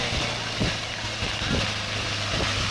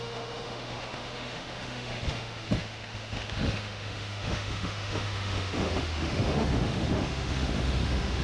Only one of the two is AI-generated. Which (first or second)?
second